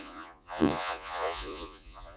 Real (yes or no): no